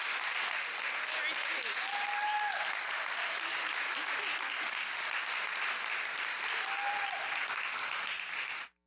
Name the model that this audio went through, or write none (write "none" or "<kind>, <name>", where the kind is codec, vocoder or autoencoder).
none